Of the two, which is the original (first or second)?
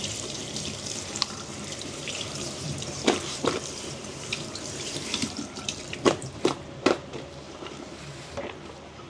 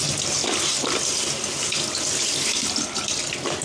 second